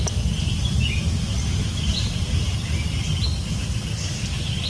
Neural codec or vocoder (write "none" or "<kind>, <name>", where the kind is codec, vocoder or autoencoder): none